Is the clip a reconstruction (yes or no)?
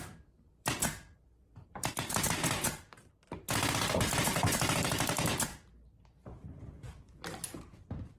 yes